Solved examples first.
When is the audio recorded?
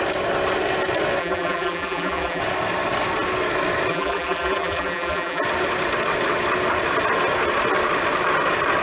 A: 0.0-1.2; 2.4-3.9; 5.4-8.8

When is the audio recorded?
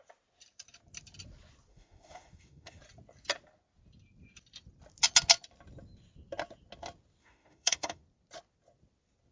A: 0.0-1.7; 2.8-7.2; 8.0-9.3